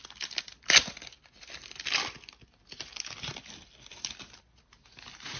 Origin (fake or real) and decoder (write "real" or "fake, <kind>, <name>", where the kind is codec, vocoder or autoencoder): real